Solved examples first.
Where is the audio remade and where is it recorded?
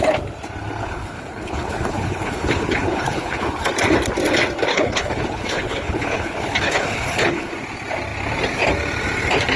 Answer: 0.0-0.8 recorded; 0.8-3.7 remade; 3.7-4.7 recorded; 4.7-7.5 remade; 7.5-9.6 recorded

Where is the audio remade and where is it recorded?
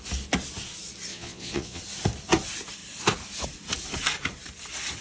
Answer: 0.0-1.1 recorded; 1.1-1.8 remade; 1.8-5.0 recorded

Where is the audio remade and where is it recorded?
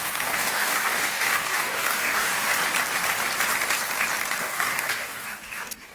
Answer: 0.0-2.5 remade; 2.5-4.4 recorded; 4.4-5.9 remade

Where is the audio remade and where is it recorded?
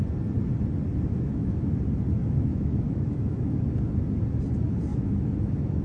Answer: 0.0-0.9 recorded; 0.9-1.8 remade; 1.8-2.2 recorded; 2.2-3.6 remade; 3.6-4.9 recorded; 4.9-5.8 remade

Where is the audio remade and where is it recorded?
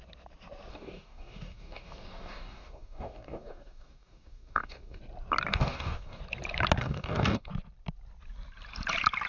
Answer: 0.0-0.7 recorded; 0.7-5.0 remade; 5.0-5.5 recorded; 5.5-6.2 remade; 6.2-6.8 recorded; 6.8-7.5 remade; 7.5-9.3 recorded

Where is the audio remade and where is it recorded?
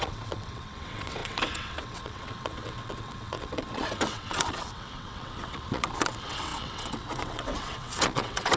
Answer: 0.0-8.6 remade